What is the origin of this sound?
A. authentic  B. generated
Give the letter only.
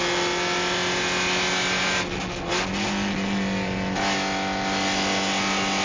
A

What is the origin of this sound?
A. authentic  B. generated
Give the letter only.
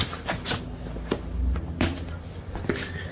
A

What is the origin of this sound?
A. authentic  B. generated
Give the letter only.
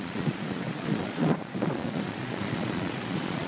B